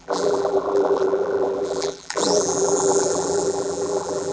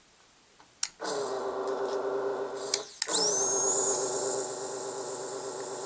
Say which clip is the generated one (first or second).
first